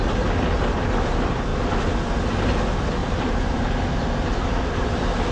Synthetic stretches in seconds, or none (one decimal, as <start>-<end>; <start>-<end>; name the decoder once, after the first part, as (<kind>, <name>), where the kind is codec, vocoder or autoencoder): 3.0-3.9 (vocoder, BigVGAN v2)